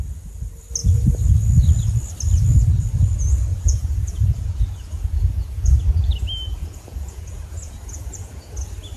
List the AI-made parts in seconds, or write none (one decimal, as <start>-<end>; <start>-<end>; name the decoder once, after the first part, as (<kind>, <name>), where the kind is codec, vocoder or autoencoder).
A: 3.5-5.7 (vocoder, Vocos); 6.6-8.5